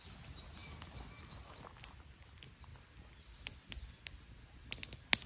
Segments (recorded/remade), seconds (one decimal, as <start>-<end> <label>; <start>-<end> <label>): 0.0-5.3 recorded